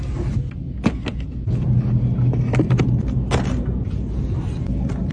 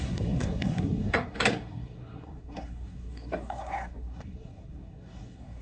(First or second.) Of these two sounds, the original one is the first